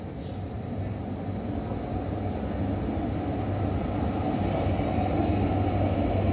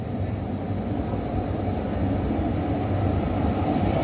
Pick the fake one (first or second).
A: second